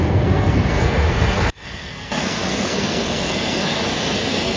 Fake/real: fake